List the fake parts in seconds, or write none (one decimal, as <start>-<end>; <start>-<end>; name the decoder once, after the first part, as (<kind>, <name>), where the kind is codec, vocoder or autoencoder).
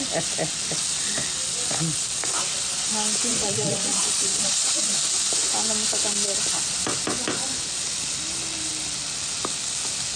3.3-4.8 (vocoder, Vocos)